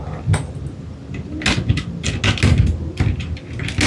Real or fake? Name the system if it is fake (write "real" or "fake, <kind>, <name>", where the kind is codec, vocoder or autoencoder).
real